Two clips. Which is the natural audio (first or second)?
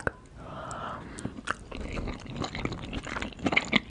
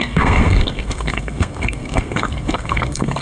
first